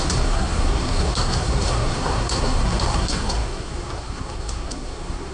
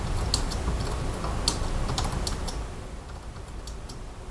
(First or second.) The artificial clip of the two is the first